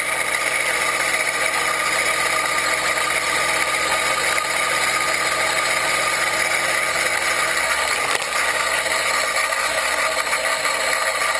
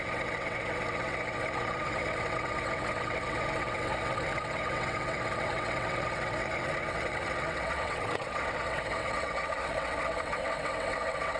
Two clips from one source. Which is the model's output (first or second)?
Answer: second